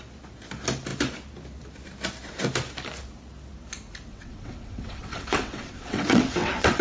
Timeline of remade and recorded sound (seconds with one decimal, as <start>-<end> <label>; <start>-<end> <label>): 0.0-4.1 recorded; 4.1-6.8 remade